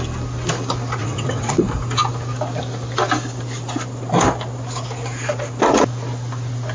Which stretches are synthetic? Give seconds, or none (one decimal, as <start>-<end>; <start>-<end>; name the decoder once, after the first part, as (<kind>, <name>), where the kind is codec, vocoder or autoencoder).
1.0-1.6 (vocoder, WaveNeXt)

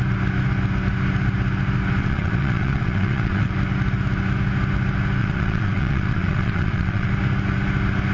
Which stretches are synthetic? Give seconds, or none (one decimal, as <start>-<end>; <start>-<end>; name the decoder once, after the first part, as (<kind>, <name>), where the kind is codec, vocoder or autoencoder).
2.0-3.5 (vocoder, WaveNeXt); 5.2-7.1